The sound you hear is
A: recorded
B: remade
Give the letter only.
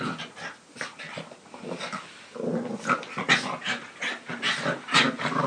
A